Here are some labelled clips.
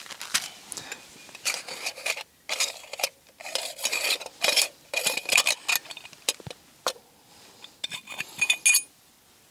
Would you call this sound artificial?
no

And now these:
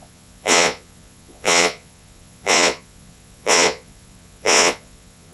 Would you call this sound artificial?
yes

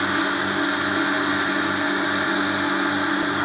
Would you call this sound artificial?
no